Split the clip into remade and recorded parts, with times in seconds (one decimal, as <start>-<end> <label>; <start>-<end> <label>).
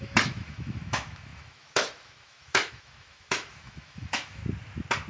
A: 0.0-4.4 remade; 4.4-5.1 recorded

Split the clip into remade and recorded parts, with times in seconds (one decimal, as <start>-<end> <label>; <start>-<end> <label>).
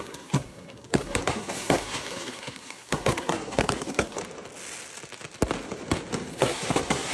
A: 0.0-4.2 remade; 4.2-6.3 recorded; 6.3-7.1 remade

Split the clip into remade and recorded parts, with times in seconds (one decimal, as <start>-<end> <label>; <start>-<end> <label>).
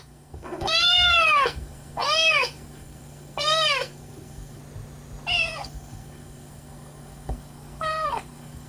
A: 0.0-4.6 remade; 4.6-5.6 recorded; 5.6-8.7 remade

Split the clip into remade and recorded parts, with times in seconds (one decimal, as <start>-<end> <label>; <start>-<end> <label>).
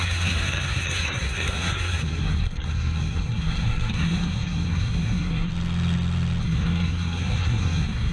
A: 0.0-5.5 remade; 5.5-6.4 recorded; 6.4-8.1 remade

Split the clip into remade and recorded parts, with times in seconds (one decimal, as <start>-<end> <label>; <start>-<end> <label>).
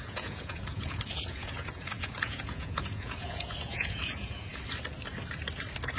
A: 0.0-4.5 remade; 4.5-6.0 recorded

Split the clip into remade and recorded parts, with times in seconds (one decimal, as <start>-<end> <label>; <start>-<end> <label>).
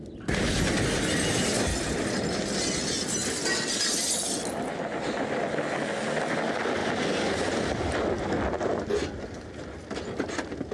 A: 0.0-10.7 recorded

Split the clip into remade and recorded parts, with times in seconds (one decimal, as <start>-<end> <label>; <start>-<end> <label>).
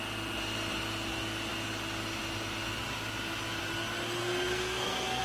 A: 0.0-4.2 recorded; 4.2-5.2 remade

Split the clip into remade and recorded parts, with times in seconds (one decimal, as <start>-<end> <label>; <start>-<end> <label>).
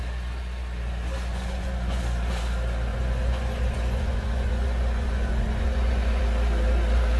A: 0.0-1.3 recorded; 1.3-2.0 remade; 2.0-2.9 recorded; 2.9-6.2 remade; 6.2-7.2 recorded